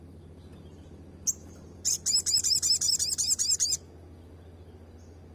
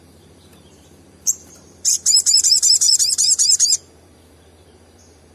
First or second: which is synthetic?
second